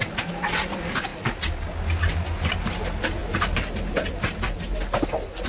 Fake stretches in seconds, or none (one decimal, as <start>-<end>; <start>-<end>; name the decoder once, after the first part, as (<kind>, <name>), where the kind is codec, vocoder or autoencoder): none